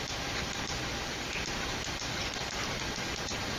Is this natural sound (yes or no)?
yes